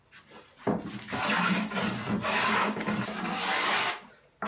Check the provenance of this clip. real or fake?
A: real